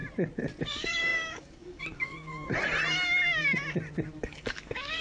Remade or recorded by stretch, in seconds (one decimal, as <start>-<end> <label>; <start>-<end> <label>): 0.0-0.6 recorded; 0.6-2.5 remade; 2.5-4.2 recorded; 4.2-5.0 remade